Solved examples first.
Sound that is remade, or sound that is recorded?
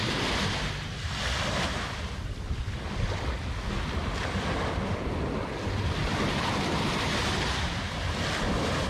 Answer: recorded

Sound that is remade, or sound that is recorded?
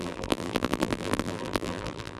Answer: remade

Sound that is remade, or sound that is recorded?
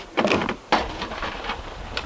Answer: remade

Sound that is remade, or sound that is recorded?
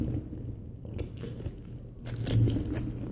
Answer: recorded